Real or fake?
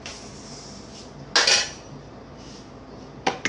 real